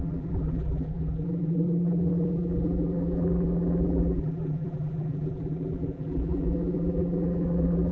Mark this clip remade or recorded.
remade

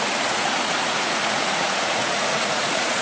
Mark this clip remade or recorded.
remade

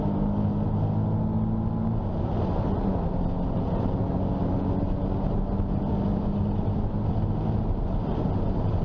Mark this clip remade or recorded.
recorded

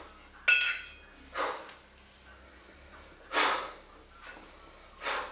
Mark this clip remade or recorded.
recorded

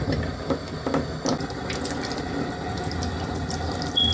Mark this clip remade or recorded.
recorded